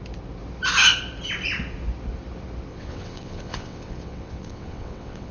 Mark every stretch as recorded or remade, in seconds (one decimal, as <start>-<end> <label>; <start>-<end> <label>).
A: 0.0-2.7 recorded; 2.7-5.3 remade